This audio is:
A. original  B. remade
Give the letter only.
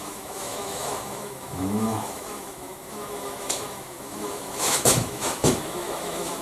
B